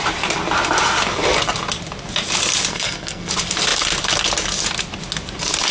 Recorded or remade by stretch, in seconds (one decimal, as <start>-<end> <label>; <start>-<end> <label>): 0.0-2.7 recorded; 2.7-3.3 remade; 3.3-5.7 recorded